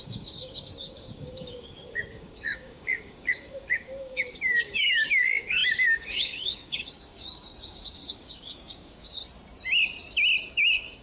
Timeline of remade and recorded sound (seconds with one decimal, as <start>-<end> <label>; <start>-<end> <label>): 0.0-9.2 remade; 9.2-10.5 recorded; 10.5-11.0 remade